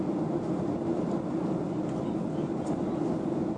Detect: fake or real real